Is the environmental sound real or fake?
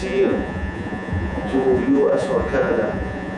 fake